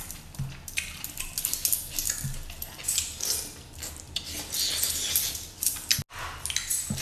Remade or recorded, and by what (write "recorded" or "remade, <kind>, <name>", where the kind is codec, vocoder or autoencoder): recorded